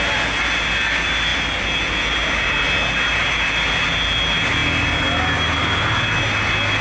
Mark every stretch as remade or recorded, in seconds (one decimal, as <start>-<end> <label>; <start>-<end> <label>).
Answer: 0.0-6.8 recorded